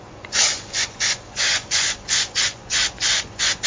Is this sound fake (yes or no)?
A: yes